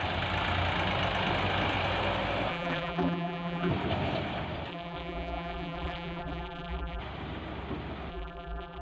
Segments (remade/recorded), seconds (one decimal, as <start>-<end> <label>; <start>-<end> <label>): 0.0-2.5 recorded; 2.5-3.7 remade; 3.7-4.7 recorded; 4.7-7.0 remade; 7.0-8.1 recorded; 8.1-8.8 remade